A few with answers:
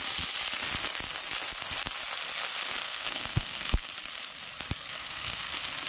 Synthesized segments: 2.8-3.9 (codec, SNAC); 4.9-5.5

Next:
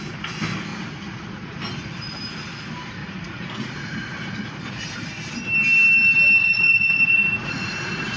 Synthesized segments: 0.7-1.6 (vocoder, Vocos); 3.0-4.7; 6.4-8.2

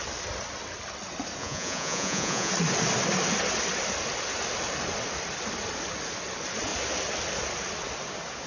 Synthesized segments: 1.4-2.5 (vocoder, Vocos)

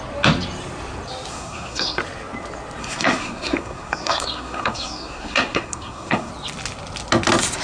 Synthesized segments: 1.3-2.0 (codec, SNAC); 2.8-6.3